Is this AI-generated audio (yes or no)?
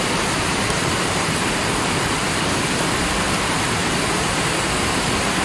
yes